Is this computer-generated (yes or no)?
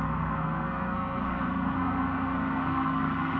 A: yes